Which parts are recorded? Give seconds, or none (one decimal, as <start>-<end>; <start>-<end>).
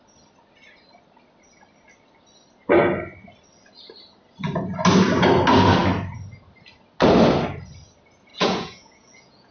0.0-8.3